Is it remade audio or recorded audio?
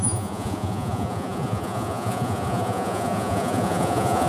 remade